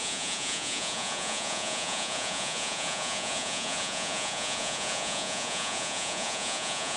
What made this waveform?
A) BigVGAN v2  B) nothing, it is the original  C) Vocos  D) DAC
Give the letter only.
C